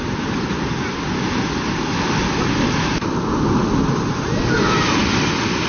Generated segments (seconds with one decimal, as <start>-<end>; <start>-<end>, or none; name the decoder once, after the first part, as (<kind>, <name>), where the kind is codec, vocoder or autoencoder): 0.0-0.5 (vocoder, BigVGAN v2); 2.3-5.7